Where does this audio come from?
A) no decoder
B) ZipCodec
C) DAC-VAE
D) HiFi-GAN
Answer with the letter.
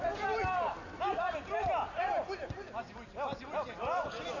A